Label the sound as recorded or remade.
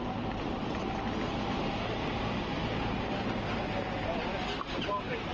recorded